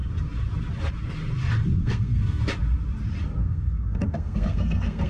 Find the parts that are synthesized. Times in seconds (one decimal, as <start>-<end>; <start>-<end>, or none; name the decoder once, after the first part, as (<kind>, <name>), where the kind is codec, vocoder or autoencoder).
1.8-2.4 (codec, SNAC); 3.4-5.1

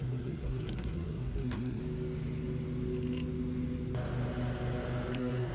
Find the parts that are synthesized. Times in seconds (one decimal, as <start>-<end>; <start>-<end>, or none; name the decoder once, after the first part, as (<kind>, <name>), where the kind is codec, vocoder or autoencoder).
0.0-1.8 (codec, SNAC); 5.1-5.5

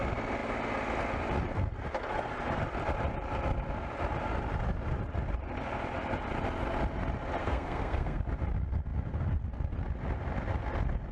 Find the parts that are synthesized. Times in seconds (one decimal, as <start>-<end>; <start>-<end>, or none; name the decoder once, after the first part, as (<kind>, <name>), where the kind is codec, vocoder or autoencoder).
7.4-8.2 (codec, SNAC)

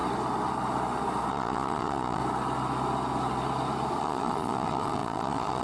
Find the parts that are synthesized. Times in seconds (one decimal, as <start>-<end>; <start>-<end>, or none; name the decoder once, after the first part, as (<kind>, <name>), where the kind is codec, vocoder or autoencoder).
1.3-2.2 (vocoder, Vocos); 4.0-5.6

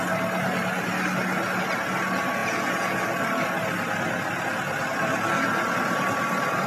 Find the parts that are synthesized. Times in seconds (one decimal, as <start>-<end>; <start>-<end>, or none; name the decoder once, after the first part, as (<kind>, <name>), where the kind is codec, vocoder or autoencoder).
2.4-3.0 (vocoder, Vocos)

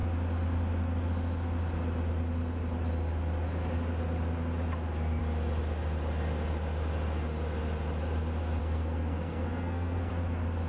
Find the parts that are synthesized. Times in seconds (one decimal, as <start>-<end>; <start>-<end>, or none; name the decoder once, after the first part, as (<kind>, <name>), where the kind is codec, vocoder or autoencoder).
8.6-10.1 (codec, SNAC)

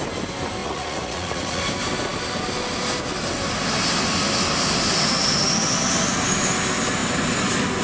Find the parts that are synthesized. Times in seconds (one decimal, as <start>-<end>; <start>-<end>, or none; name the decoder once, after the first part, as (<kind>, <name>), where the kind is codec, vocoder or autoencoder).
0.6-1.6 (vocoder, Vocos)

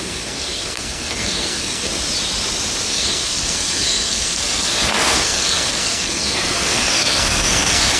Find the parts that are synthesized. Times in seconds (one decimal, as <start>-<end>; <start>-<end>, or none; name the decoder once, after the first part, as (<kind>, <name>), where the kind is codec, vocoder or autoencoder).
0.0-1.9 (codec, SNAC); 2.9-8.0